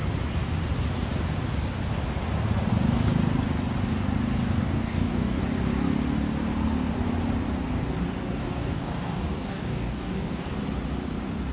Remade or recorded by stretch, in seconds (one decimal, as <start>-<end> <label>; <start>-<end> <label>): 0.0-4.6 recorded; 4.6-5.4 remade; 5.4-8.4 recorded; 8.4-10.5 remade; 10.5-11.5 recorded